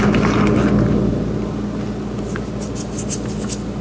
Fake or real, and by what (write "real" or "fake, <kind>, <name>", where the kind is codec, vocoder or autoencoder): real